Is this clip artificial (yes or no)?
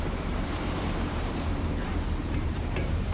yes